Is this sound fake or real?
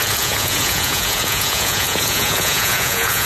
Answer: fake